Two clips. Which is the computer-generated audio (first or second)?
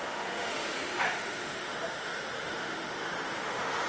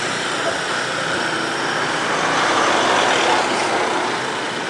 first